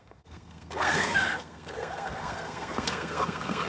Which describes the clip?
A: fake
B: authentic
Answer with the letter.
A